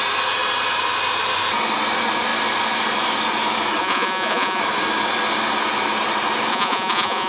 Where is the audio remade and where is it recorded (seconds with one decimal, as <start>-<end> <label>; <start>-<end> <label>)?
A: 0.0-3.8 recorded; 3.8-4.6 remade; 4.6-6.5 recorded; 6.5-7.3 remade